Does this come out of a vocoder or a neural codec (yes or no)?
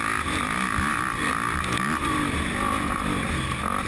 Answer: no